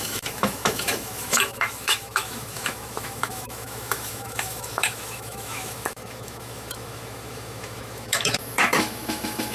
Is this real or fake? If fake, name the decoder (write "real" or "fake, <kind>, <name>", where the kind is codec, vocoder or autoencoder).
fake, autoencoder, DAC-VAE